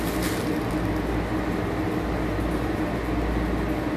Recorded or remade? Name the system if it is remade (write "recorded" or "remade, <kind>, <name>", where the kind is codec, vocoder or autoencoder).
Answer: recorded